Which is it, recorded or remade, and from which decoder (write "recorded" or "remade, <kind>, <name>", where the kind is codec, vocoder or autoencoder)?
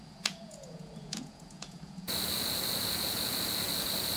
remade, vocoder, Vocos